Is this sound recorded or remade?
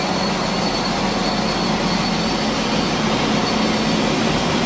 recorded